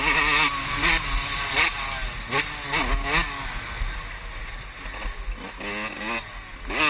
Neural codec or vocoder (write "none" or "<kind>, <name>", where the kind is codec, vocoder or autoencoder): none